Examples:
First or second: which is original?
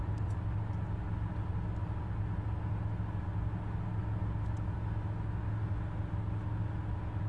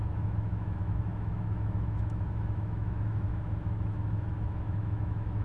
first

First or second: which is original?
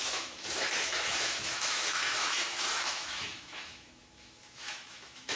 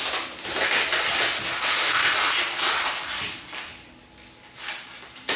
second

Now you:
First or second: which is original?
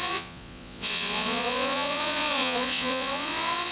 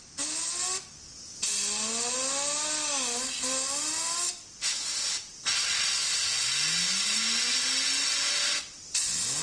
second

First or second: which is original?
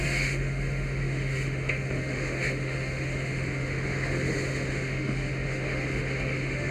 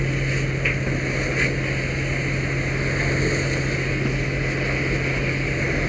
second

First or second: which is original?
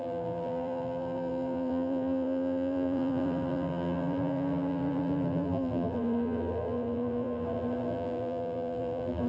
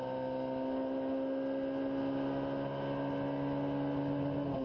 second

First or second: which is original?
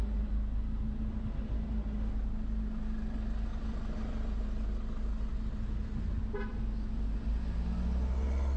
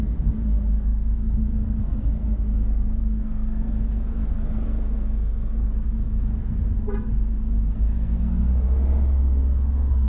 first